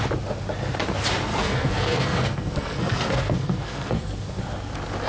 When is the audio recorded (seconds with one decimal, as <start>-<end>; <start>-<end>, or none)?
0.0-1.3; 4.4-5.1